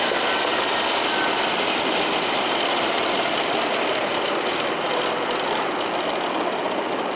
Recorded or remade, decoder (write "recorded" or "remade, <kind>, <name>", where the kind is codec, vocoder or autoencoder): recorded